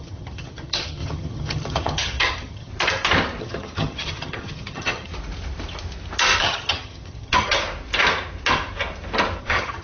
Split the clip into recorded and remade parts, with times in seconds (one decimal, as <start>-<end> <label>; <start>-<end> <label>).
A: 0.0-2.7 remade; 2.7-3.4 recorded; 3.4-5.1 remade; 5.1-6.4 recorded; 6.4-7.6 remade; 7.6-9.4 recorded; 9.4-9.8 remade